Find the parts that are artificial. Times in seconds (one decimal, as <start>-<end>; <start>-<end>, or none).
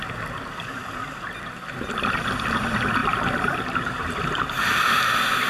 3.0-4.2